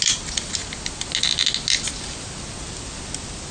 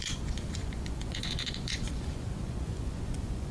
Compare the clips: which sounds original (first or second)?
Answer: first